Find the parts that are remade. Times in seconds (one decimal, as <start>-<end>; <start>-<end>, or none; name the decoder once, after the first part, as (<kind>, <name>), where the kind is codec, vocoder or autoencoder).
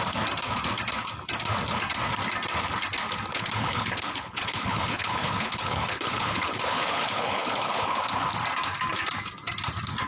3.3-8.0 (codec, HILCodec)